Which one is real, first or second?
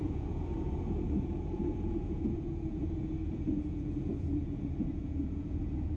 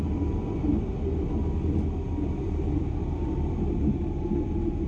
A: second